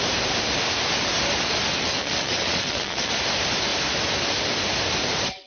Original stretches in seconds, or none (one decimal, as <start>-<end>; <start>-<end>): 0.0-1.7; 3.1-5.5